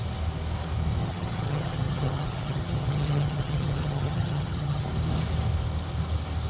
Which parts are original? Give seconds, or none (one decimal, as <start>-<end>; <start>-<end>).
0.0-1.0; 4.9-6.5